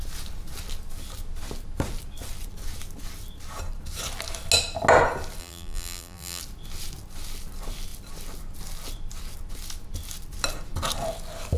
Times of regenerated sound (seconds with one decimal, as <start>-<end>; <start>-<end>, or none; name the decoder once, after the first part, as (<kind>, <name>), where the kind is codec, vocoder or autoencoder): 5.4-6.4 (vocoder, BigVGAN v2)